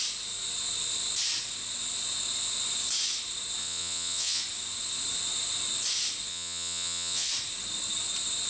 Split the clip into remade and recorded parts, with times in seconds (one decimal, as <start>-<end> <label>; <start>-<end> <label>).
0.0-3.6 recorded; 3.6-4.4 remade; 4.4-6.3 recorded; 6.3-7.3 remade; 7.3-8.5 recorded